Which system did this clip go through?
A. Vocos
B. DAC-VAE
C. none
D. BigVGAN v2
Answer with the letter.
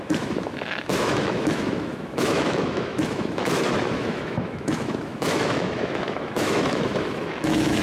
B